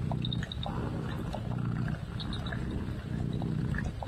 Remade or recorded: recorded